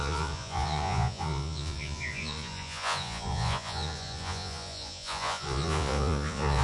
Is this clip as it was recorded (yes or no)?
no